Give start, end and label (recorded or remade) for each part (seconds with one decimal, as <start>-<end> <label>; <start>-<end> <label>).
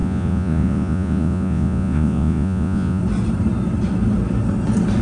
0.0-3.0 remade; 3.0-5.0 recorded